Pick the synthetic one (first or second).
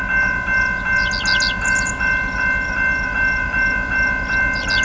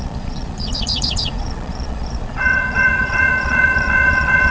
second